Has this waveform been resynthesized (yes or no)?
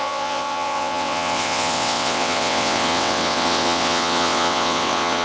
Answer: yes